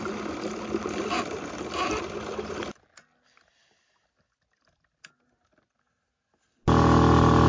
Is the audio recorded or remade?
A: recorded